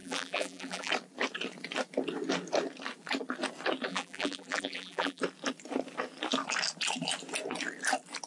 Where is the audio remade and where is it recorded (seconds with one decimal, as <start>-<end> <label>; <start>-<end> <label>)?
0.0-0.9 remade; 0.9-3.9 recorded; 3.9-5.2 remade; 5.2-8.3 recorded